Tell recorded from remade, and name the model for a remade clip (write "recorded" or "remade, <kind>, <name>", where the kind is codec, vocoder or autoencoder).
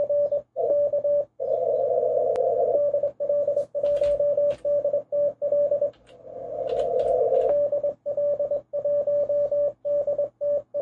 recorded